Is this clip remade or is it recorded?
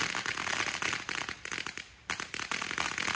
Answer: recorded